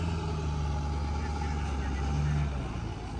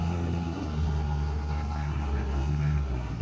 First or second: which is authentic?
first